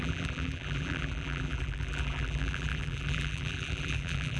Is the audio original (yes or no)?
no